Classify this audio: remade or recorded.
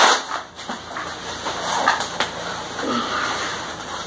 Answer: recorded